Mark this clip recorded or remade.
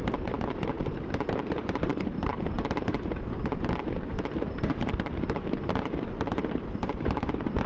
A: remade